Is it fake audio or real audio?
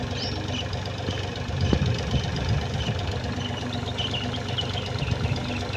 real